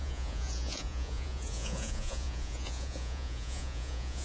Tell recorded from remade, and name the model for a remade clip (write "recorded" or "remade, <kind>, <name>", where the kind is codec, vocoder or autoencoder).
remade, vocoder, Vocos